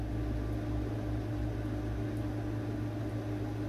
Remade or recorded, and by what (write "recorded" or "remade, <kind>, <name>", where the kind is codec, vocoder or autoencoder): recorded